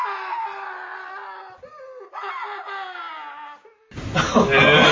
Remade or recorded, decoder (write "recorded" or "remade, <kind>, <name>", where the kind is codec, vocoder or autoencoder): recorded